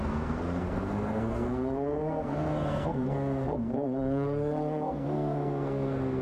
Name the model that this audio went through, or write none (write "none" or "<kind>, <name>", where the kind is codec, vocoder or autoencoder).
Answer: codec, SNAC